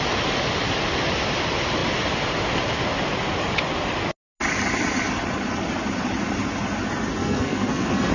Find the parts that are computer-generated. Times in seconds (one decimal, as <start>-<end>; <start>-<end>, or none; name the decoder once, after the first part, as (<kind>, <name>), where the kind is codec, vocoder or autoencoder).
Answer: 7.2-8.1 (codec, SNAC)